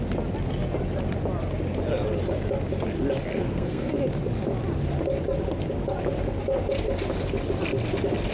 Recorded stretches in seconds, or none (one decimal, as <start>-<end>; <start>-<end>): 0.0-3.3; 3.9-8.3